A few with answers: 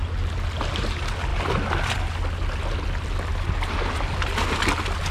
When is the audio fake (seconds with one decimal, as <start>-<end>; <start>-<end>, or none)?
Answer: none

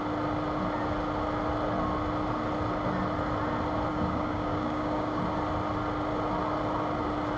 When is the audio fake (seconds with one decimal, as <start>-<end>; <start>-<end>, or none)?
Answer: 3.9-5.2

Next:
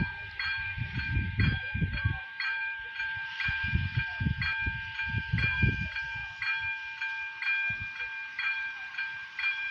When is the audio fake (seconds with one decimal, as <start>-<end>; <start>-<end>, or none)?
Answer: 0.0-3.9; 5.2-6.2; 8.3-9.7

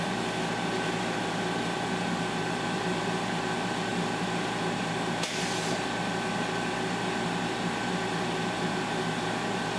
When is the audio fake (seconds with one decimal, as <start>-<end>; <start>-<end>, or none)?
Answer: none